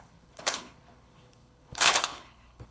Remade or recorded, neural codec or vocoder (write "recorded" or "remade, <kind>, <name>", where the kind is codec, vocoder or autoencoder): remade, codec, HILCodec